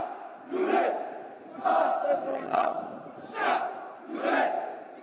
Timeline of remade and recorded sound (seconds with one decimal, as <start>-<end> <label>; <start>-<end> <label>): 0.0-2.3 recorded; 2.3-2.8 remade; 2.8-5.0 recorded